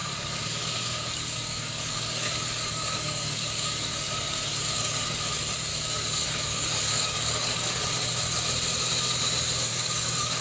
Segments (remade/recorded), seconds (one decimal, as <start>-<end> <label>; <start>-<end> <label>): 0.0-5.2 remade; 5.2-5.7 recorded; 5.7-7.8 remade; 7.8-9.7 recorded; 9.7-10.4 remade